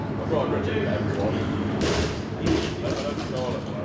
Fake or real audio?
real